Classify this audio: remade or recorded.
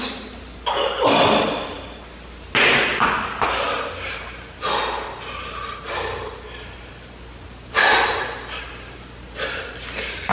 recorded